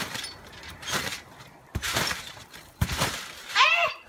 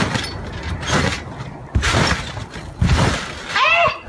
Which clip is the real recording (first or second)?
second